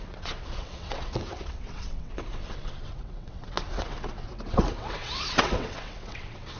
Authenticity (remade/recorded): remade